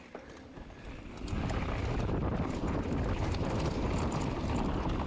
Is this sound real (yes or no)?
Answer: yes